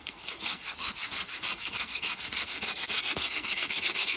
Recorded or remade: remade